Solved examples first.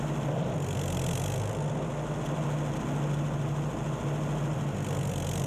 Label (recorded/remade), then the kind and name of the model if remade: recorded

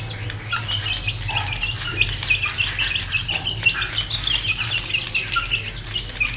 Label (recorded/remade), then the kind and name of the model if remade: recorded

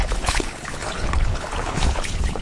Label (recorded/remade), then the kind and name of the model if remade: remade, codec, HILCodec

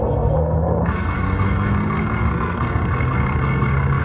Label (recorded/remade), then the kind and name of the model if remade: remade, codec, SNAC